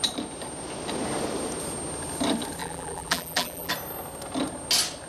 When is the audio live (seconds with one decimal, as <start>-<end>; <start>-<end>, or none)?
0.0-2.6; 3.7-5.1